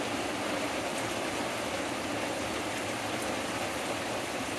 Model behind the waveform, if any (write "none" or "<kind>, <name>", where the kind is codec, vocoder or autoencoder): none